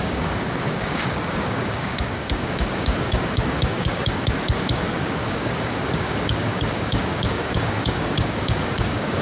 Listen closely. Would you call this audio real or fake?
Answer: fake